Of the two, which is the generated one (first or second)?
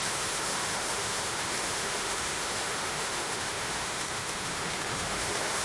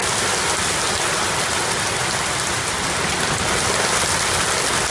first